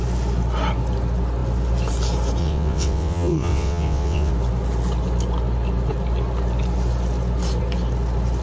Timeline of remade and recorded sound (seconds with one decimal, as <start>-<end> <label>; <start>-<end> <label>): 0.0-2.4 recorded; 2.4-4.3 remade; 4.3-8.4 recorded